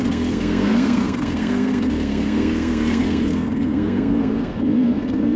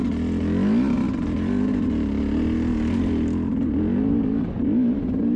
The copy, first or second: first